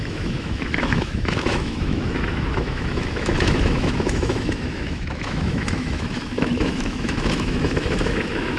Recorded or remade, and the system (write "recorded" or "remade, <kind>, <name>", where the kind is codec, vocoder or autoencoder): remade, autoencoder, DAC-VAE